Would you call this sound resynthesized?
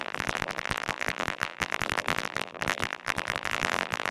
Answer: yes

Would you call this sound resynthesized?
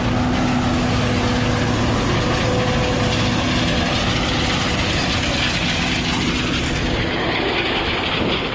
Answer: no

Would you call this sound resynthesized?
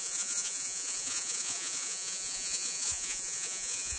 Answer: yes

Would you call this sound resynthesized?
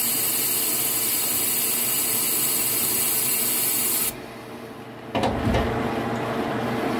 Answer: no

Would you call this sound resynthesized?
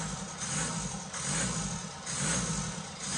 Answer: no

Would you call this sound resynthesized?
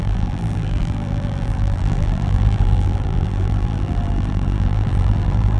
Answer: yes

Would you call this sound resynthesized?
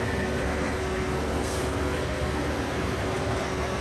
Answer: yes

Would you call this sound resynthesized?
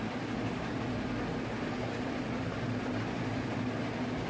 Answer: no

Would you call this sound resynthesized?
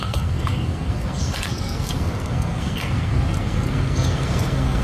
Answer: yes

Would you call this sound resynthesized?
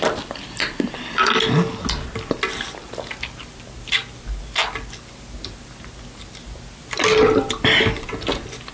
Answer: no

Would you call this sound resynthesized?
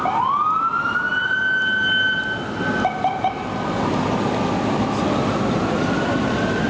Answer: no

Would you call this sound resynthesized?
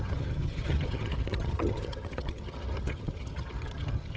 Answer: yes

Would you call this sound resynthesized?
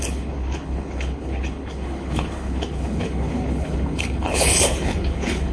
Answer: yes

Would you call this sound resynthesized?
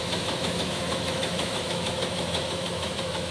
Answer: yes